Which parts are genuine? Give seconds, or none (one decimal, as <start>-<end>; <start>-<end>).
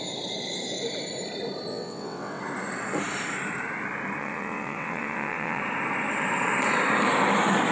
0.0-1.7; 2.4-4.2; 5.6-7.7